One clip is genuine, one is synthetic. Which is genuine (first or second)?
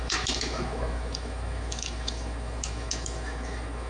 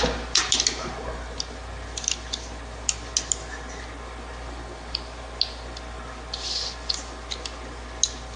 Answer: second